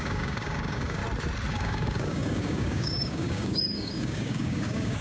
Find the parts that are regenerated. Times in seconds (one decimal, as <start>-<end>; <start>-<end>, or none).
0.0-1.0; 1.5-5.0